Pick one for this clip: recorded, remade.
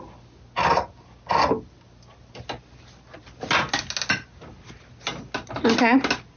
recorded